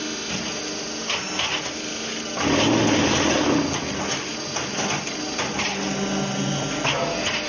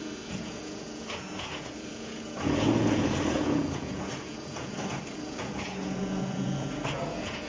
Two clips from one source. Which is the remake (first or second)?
second